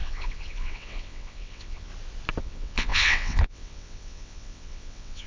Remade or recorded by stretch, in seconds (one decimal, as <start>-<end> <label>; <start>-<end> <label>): 0.0-1.9 remade; 1.9-2.4 recorded; 2.4-5.3 remade